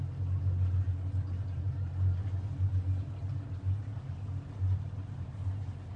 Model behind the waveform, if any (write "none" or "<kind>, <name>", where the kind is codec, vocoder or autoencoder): none